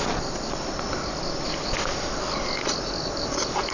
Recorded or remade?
recorded